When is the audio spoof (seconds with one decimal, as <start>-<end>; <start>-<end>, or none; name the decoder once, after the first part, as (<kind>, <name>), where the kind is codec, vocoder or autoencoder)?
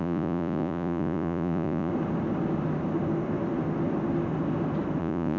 0.0-1.9 (vocoder, Vocos); 5.0-5.4